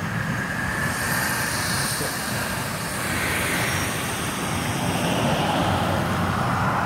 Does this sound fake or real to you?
real